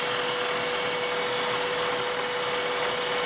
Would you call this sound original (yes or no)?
yes